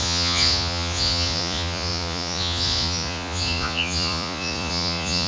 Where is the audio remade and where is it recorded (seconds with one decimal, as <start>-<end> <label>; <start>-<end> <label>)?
0.0-5.3 remade

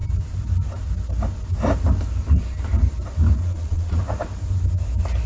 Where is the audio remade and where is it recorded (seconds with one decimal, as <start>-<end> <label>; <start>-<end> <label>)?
0.0-3.4 recorded; 3.4-4.0 remade; 4.0-5.3 recorded

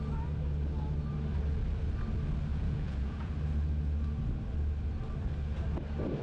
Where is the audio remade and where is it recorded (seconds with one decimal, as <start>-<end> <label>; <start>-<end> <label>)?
0.0-2.5 recorded; 2.5-3.3 remade; 3.3-6.2 recorded

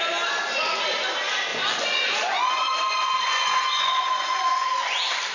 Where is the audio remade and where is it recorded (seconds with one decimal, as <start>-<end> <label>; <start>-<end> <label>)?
0.0-1.5 recorded; 1.5-4.7 remade; 4.7-5.3 recorded